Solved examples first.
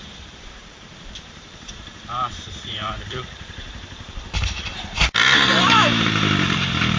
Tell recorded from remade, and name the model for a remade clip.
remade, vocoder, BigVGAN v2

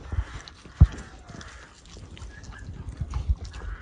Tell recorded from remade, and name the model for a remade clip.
recorded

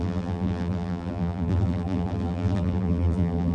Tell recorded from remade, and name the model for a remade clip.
remade, vocoder, BigVGAN v2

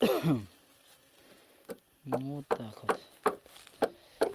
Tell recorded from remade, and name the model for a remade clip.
recorded